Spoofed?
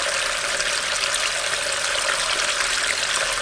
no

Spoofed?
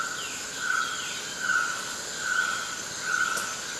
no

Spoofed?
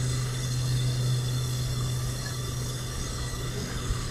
yes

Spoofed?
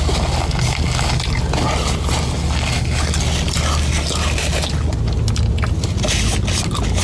no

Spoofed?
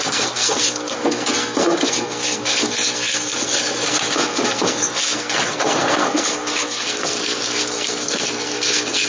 yes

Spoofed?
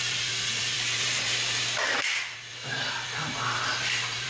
yes